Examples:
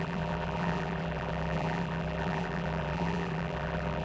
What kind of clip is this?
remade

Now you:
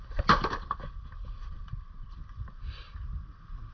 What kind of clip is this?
remade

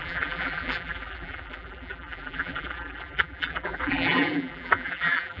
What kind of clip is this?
remade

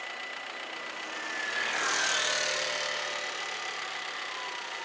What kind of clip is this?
recorded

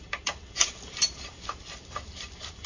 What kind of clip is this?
remade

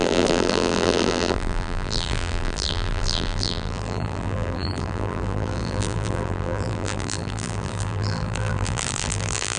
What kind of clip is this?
remade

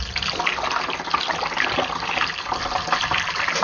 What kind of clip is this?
recorded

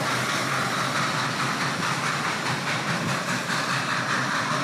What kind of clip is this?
recorded